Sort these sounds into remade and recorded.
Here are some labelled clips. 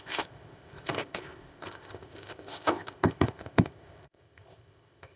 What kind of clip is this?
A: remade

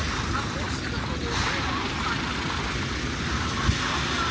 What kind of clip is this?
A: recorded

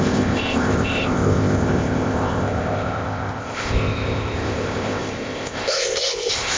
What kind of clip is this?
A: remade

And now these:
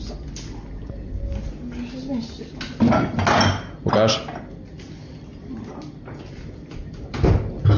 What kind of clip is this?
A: recorded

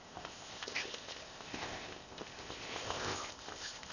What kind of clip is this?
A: remade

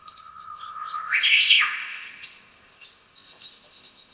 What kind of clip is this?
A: remade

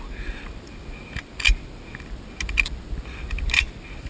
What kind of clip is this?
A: recorded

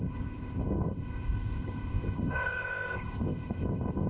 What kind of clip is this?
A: remade